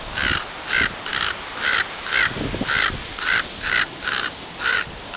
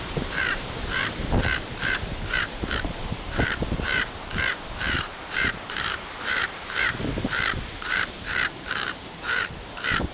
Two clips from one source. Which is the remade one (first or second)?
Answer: second